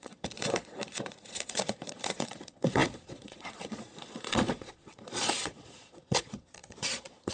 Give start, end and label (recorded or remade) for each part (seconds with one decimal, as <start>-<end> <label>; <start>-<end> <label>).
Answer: 0.0-7.3 remade